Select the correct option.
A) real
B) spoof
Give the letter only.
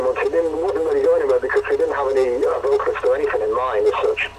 A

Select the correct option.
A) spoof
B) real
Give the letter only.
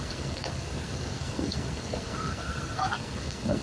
A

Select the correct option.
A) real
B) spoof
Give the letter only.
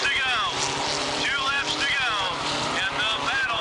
A